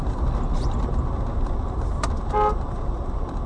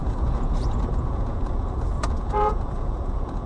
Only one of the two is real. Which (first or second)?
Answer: first